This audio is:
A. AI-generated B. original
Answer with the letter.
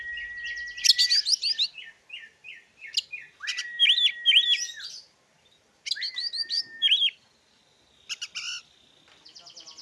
B